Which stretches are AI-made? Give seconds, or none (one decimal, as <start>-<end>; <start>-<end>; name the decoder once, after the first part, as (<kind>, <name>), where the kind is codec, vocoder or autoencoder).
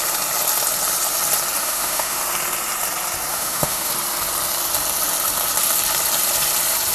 1.6-2.2 (autoencoder, DAC-VAE); 3.3-3.9